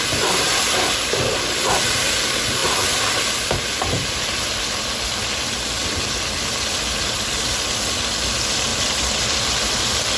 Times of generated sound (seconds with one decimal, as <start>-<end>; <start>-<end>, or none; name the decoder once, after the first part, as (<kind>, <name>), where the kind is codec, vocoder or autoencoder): none